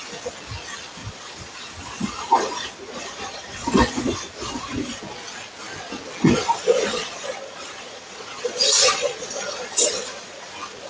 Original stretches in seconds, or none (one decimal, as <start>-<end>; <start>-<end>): 0.0-1.0; 5.0-6.2; 10.5-10.9